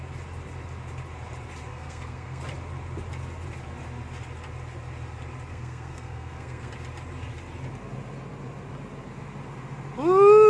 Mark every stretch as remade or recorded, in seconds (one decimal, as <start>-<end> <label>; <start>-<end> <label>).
0.0-1.7 recorded; 1.7-2.4 remade; 2.4-5.5 recorded; 5.5-6.7 remade; 6.7-10.5 recorded